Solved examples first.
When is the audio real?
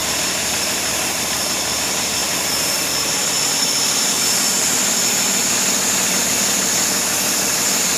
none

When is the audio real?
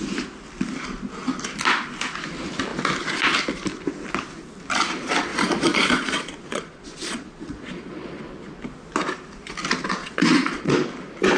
0.0-5.3; 8.2-10.0; 10.7-11.4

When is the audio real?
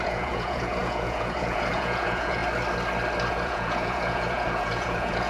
2.4-3.3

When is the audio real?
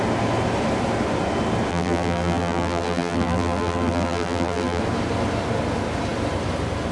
0.0-1.7; 4.8-6.9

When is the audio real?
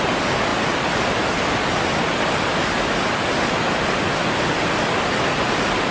0.0-5.9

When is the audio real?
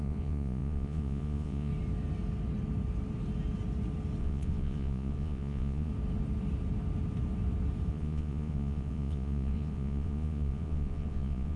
1.7-4.2; 5.9-7.9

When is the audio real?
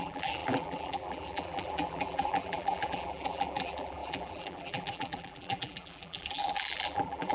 none